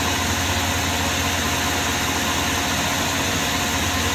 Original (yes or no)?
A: yes